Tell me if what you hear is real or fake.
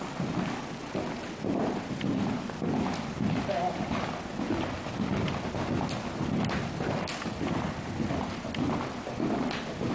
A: real